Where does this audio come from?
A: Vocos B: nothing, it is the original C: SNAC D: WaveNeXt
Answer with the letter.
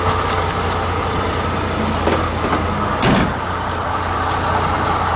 B